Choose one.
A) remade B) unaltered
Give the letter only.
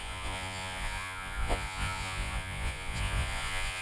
A